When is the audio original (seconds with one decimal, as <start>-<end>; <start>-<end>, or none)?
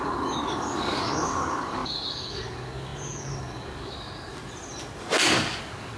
4.4-5.6